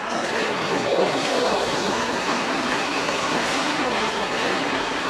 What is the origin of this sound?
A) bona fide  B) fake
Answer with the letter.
B